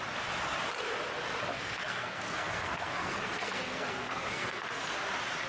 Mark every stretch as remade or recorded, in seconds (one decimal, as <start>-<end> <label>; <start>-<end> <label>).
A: 0.0-1.5 recorded; 1.5-4.8 remade; 4.8-5.5 recorded